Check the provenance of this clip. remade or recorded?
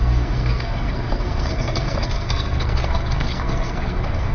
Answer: remade